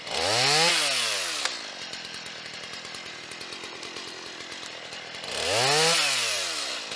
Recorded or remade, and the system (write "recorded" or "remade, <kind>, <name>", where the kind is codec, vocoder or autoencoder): recorded